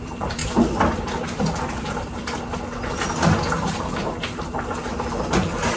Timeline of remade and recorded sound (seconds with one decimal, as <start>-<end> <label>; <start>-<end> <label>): 0.0-0.4 remade; 0.4-3.9 recorded; 3.9-5.8 remade